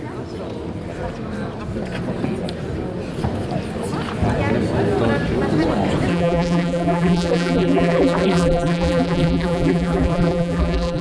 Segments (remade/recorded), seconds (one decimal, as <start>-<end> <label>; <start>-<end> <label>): 0.0-6.1 recorded; 6.1-11.0 remade